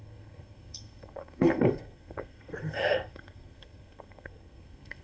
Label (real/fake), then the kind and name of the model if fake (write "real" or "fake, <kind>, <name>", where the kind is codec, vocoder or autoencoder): fake, codec, SNAC